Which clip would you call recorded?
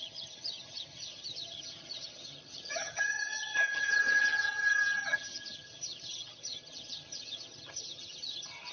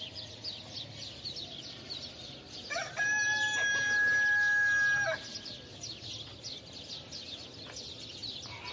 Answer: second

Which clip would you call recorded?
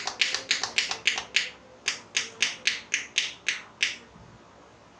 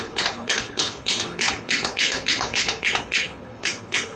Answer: first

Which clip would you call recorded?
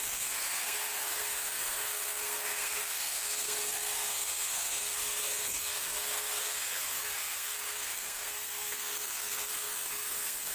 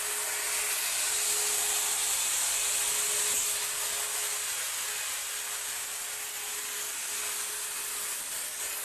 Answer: second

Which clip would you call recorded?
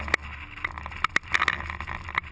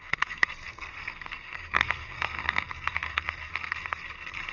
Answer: first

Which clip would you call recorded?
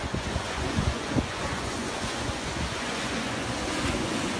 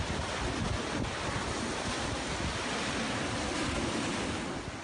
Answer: second